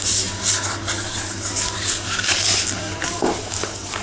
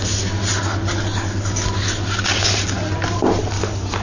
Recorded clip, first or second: second